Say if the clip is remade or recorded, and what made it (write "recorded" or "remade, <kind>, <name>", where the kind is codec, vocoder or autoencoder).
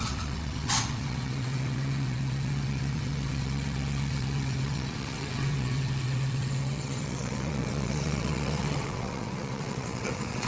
remade, vocoder, WaveNeXt